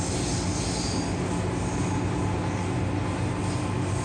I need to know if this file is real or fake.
real